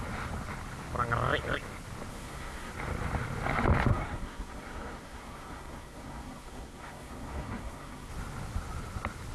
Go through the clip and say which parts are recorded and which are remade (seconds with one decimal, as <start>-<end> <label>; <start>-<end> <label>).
0.0-2.1 recorded; 2.1-2.7 remade; 2.7-3.9 recorded; 3.9-8.1 remade; 8.1-9.3 recorded